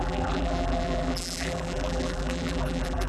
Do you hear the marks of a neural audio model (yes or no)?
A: yes